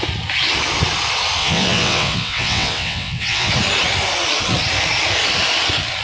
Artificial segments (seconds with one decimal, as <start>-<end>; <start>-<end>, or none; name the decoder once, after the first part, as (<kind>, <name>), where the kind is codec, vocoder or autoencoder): 1.4-3.5 (vocoder, WaveNeXt)